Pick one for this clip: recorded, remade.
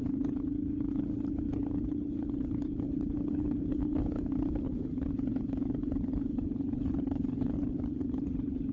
remade